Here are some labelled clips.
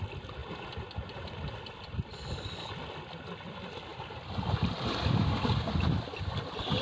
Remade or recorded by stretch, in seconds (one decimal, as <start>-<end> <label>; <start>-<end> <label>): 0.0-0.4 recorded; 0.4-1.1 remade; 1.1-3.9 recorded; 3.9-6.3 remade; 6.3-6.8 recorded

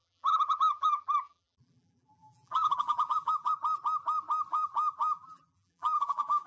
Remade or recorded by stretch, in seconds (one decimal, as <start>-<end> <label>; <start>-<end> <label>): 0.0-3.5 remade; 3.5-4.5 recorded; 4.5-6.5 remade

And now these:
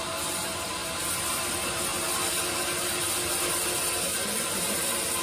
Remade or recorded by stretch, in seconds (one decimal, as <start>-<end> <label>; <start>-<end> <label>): 0.0-4.1 recorded; 4.1-5.2 remade